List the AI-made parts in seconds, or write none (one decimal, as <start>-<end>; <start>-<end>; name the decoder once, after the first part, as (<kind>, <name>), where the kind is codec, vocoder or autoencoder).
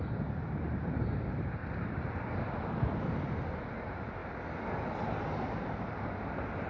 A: none